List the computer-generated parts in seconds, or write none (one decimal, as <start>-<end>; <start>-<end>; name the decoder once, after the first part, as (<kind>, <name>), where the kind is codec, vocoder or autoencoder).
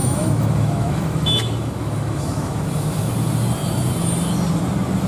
0.0-3.1 (autoencoder, DAC-VAE)